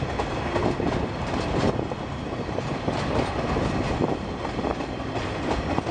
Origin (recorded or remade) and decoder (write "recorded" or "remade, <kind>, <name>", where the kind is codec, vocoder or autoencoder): recorded